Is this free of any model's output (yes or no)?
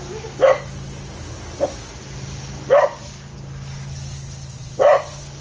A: yes